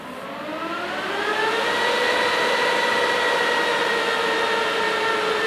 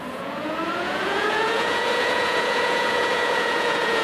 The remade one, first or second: second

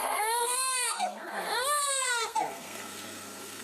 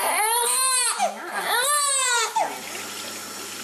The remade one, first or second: first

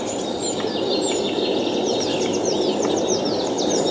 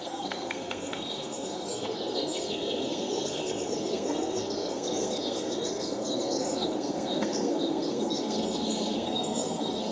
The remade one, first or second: second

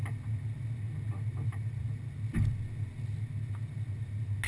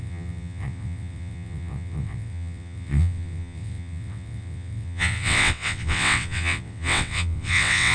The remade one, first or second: second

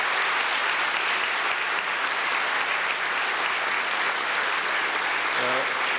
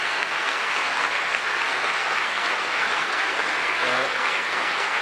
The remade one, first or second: second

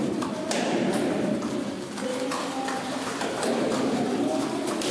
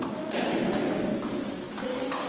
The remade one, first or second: first